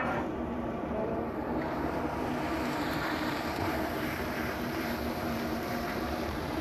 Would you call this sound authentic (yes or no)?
no